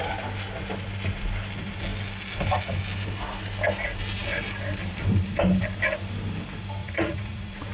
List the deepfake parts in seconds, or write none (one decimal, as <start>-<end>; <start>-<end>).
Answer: 6.8-7.7